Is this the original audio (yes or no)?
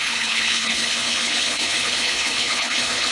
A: no